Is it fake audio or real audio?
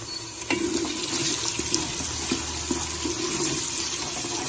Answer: real